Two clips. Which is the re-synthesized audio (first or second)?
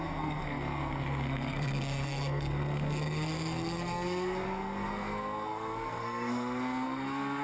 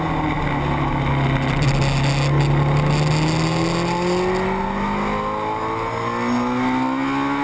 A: first